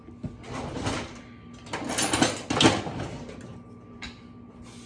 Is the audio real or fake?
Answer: real